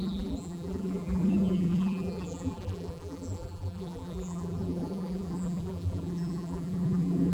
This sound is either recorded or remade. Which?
remade